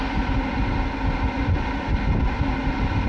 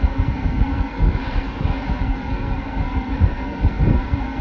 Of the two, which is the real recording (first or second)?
first